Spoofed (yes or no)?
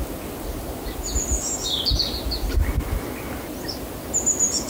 no